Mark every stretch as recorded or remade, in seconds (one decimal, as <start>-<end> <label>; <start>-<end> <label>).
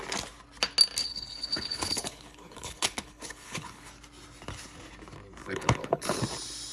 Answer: 0.0-1.1 recorded; 1.1-3.9 remade; 3.9-5.4 recorded; 5.4-6.2 remade; 6.2-6.7 recorded